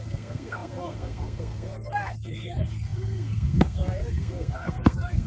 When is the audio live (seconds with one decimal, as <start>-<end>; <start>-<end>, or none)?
none